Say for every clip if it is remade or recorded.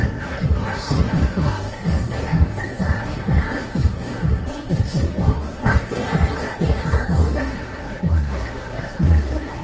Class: remade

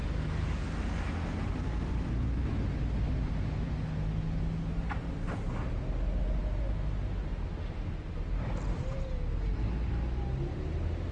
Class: recorded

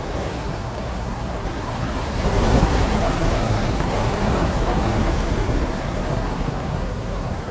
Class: remade